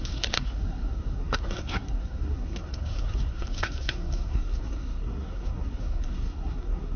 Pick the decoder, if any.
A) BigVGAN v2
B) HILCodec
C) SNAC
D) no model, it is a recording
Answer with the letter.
C